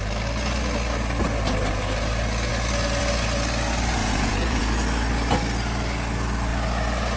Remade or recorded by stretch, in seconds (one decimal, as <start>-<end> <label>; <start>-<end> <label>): 0.0-4.0 recorded; 4.0-4.6 remade; 4.6-7.2 recorded